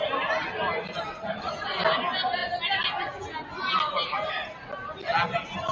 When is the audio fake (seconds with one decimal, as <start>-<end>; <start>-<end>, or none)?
none